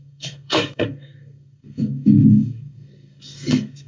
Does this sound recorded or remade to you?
remade